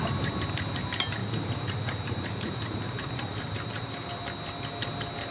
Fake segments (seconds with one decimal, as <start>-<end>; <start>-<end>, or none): 1.2-4.1